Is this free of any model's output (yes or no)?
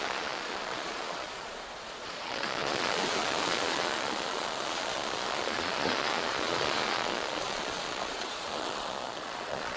no